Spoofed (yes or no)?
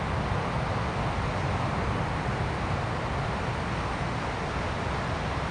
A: no